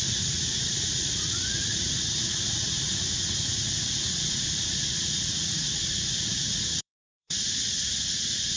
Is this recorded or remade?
remade